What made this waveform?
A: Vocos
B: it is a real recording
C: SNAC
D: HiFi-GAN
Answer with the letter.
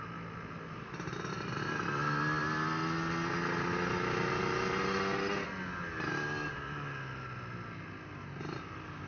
B